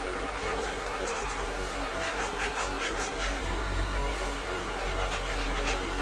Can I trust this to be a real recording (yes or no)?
no